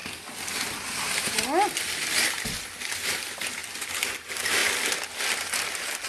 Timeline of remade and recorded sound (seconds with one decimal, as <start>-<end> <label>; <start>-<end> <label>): 0.0-6.1 recorded

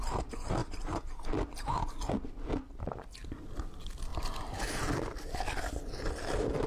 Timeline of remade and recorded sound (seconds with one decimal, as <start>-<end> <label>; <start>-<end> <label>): 0.0-0.6 recorded; 0.6-1.2 remade; 1.2-4.1 recorded; 4.1-5.4 remade; 5.4-6.7 recorded

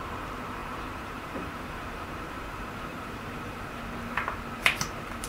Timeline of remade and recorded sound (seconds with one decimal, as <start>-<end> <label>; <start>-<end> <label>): 0.0-0.6 recorded; 0.6-3.8 remade; 3.8-5.3 recorded

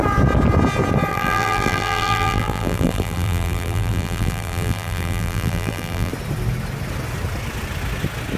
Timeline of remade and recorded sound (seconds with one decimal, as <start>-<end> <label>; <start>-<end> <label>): 0.0-1.1 recorded; 1.1-6.1 remade; 6.1-8.4 recorded

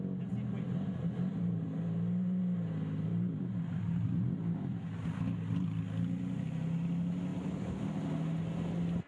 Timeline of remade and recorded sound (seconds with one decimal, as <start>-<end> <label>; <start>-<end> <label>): 0.0-1.3 recorded; 1.3-2.4 remade; 2.4-3.1 recorded; 3.1-5.0 remade; 5.0-9.1 recorded